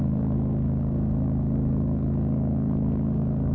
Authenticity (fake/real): fake